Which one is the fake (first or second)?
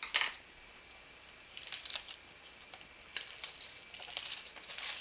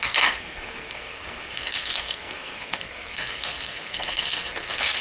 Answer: second